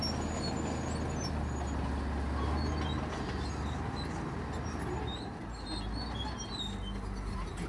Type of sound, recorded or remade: recorded